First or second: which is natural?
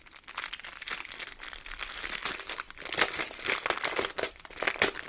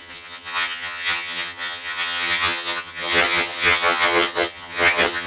first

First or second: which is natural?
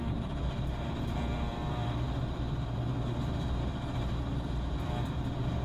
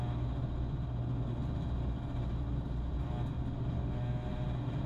second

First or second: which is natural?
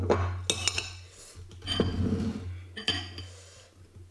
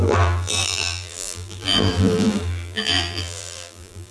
first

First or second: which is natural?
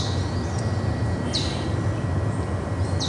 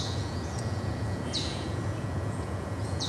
first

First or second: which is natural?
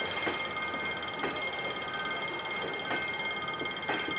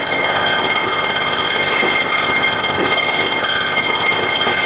first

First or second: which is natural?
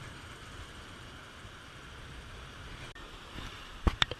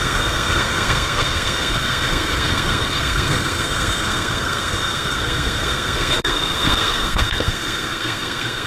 first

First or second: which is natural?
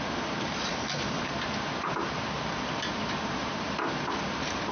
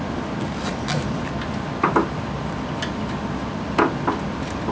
second